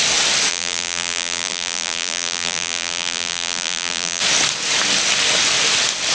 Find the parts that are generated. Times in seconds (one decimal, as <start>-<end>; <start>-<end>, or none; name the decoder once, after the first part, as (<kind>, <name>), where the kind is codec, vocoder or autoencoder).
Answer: 0.5-4.2 (vocoder, BigVGAN v2)